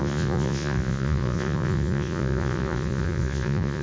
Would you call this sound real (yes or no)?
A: no